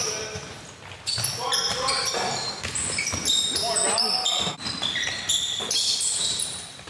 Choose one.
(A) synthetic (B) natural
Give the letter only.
B